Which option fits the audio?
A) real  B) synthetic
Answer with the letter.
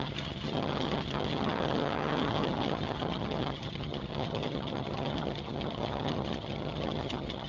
B